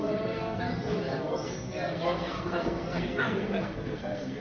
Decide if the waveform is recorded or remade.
remade